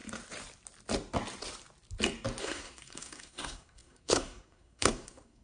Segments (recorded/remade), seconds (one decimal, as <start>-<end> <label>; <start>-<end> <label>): 0.0-2.4 recorded; 2.4-5.4 remade